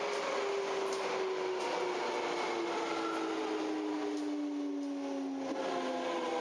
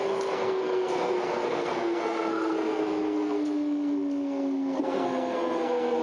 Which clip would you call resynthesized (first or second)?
second